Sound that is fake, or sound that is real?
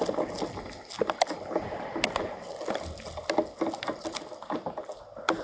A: real